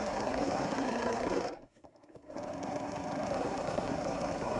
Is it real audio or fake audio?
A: fake